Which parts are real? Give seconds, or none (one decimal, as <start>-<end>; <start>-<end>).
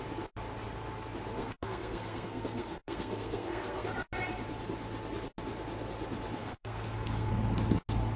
0.0-1.4; 3.9-6.4; 7.3-8.2